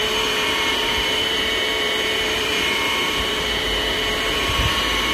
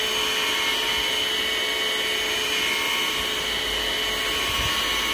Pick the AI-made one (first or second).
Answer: first